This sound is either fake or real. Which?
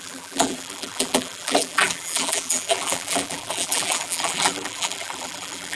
fake